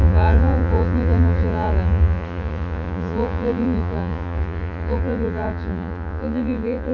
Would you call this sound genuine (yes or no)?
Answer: no